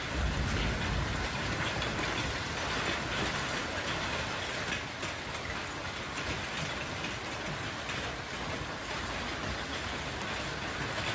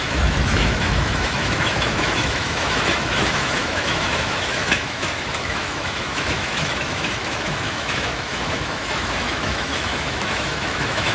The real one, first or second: first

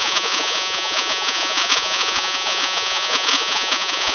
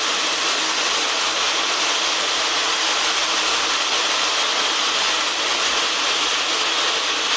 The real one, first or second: second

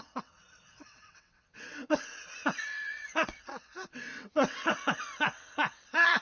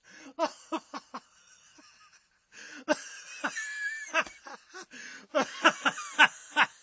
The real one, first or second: second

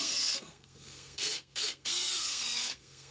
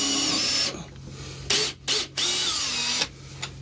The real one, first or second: second